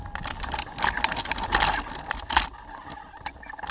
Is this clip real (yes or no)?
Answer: yes